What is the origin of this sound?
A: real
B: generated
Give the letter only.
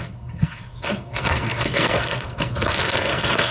B